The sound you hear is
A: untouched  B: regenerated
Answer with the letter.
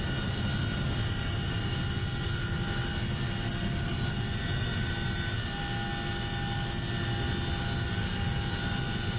A